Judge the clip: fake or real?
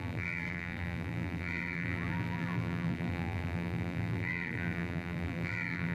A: fake